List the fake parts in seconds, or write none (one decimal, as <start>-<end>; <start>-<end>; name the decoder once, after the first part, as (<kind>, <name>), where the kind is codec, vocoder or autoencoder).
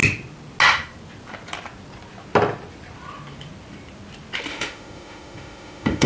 4.5-6.1 (autoencoder, DAC-VAE)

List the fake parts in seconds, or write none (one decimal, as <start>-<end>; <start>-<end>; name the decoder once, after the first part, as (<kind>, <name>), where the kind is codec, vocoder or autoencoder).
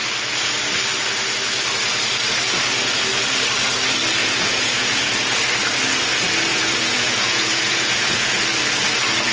4.2-5.4 (vocoder, Vocos); 6.5-8.3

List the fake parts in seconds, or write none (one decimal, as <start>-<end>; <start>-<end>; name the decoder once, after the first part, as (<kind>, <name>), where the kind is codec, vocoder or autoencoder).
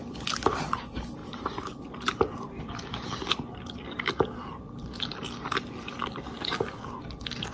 none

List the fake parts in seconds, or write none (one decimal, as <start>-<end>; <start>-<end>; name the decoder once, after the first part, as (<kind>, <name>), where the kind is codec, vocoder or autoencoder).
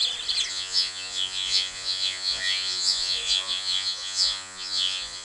0.5-5.2 (vocoder, Vocos)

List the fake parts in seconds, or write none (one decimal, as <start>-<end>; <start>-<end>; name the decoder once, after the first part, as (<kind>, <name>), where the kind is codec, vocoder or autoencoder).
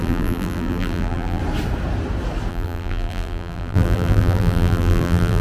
0.0-1.4 (vocoder, BigVGAN v2); 2.5-5.4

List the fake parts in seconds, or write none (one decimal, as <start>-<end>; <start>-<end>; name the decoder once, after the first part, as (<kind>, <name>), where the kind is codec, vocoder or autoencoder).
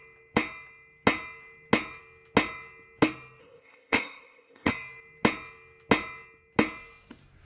3.4-4.7 (codec, ZipCodec)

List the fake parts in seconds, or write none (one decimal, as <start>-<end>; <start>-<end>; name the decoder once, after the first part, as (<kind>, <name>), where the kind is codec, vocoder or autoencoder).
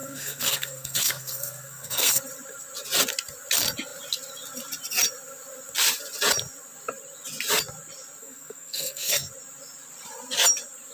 0.0-2.2 (codec, SNAC); 8.2-9.3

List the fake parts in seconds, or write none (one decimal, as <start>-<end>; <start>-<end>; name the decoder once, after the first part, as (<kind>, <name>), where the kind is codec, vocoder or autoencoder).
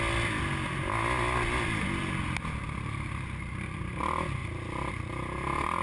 none